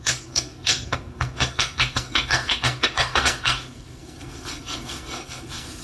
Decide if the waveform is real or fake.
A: fake